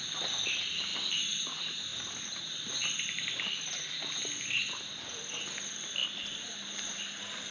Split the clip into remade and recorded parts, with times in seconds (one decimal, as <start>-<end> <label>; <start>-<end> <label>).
0.0-0.9 recorded; 0.9-2.4 remade; 2.4-6.0 recorded; 6.0-6.8 remade; 6.8-7.5 recorded